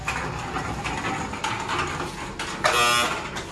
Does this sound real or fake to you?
real